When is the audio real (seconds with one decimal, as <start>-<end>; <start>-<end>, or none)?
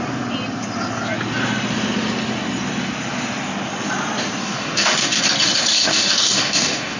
0.0-4.4; 5.2-5.7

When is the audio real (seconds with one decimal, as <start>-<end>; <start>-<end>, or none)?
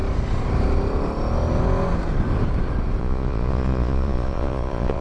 0.0-3.0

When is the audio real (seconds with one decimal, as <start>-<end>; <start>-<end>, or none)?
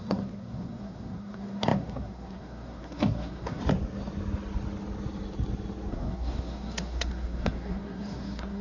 3.6-5.9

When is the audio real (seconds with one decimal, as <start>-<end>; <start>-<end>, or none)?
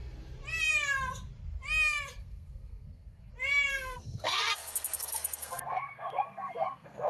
0.0-2.2; 3.3-3.7